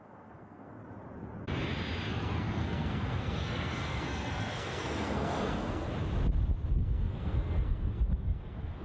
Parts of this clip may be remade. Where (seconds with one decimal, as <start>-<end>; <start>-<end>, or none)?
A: 0.0-0.8; 2.1-5.9; 6.7-8.8